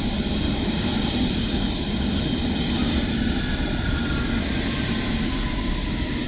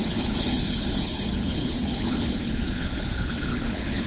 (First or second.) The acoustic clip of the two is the first